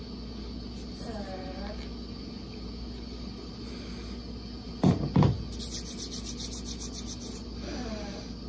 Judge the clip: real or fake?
real